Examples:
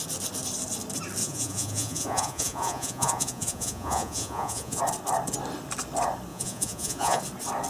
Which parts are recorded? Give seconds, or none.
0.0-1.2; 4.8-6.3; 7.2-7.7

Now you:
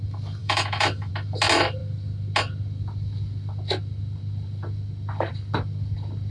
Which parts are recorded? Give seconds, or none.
0.0-0.4; 1.1-6.3

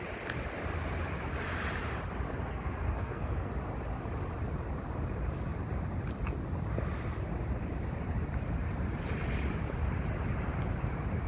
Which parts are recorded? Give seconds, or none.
0.0-2.5; 3.5-11.3

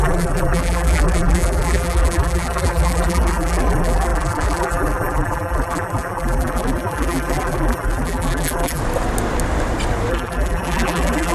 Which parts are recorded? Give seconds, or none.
8.8-10.1

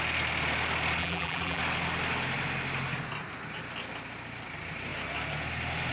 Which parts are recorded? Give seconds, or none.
0.0-1.0; 1.6-5.9

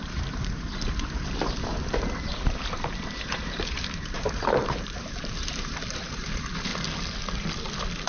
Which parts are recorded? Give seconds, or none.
6.7-8.1